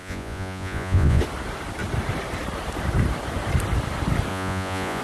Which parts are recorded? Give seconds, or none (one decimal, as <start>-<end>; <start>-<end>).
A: 1.2-4.3